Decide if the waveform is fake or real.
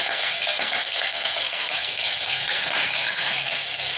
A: fake